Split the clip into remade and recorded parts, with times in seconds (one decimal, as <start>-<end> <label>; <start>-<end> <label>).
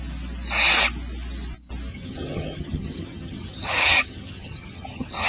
0.0-1.9 recorded; 1.9-5.3 remade